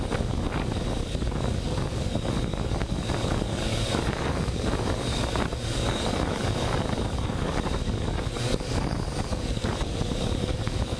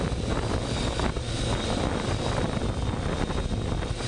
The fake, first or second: first